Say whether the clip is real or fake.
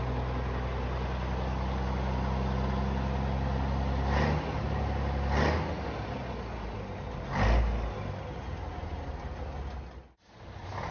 real